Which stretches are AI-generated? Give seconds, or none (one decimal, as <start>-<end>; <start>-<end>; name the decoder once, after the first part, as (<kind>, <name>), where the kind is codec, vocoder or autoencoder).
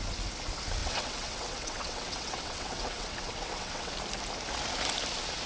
0.8-3.9 (vocoder, WaveNeXt)